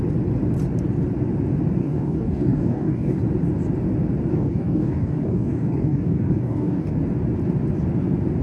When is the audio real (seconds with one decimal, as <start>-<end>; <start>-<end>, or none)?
0.0-1.8; 3.2-4.3; 6.9-8.4